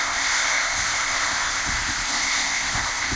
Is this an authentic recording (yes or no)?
no